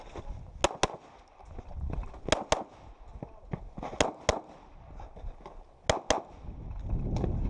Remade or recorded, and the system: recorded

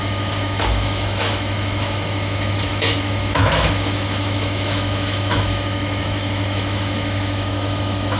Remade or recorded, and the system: remade, autoencoder, DAC-VAE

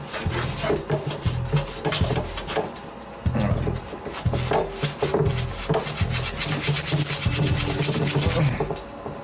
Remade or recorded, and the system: recorded